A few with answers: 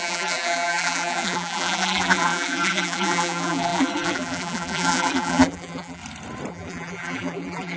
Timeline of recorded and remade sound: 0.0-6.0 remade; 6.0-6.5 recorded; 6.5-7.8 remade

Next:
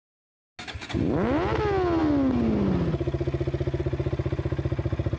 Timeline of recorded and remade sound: 0.0-5.2 recorded

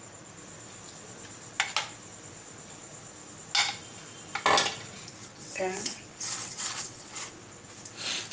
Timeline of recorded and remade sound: 0.0-5.2 recorded; 5.2-7.2 remade; 7.2-8.3 recorded

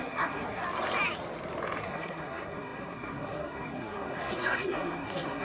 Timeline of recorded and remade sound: 0.0-0.6 remade; 0.6-1.8 recorded; 1.8-5.4 remade

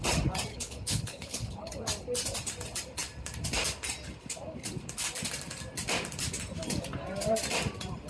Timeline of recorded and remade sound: 0.0-0.5 recorded; 0.5-1.7 remade; 1.7-8.1 recorded

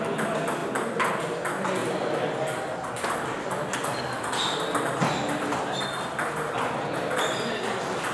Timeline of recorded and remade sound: 0.0-8.1 recorded

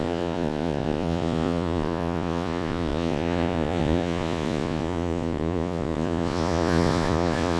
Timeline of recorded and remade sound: 0.0-7.6 remade

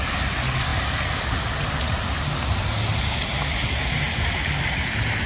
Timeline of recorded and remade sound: 0.0-5.3 recorded